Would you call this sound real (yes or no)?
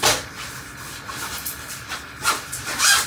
yes